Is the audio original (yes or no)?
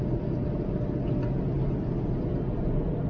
yes